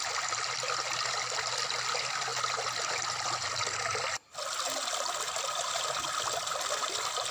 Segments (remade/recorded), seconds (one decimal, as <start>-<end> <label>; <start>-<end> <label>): 0.0-7.3 recorded